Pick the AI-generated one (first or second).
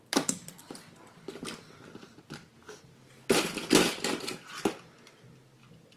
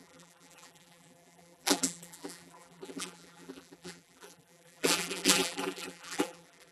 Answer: second